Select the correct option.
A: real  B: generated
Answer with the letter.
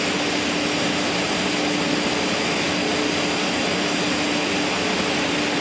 A